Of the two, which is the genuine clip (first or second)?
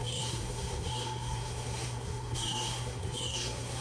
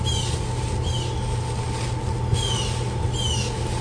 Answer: second